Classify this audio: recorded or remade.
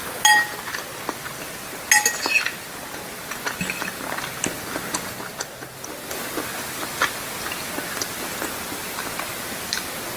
recorded